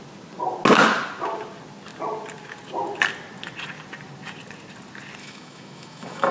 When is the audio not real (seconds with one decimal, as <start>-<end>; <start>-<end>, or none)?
5.2-6.3